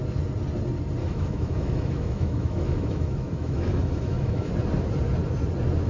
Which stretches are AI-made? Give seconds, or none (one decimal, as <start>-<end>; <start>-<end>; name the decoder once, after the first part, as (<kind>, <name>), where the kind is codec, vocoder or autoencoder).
1.0-4.5 (autoencoder, DAC-VAE)